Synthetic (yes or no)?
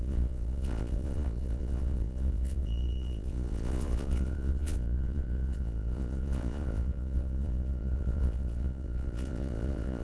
yes